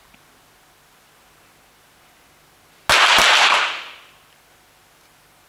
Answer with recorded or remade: recorded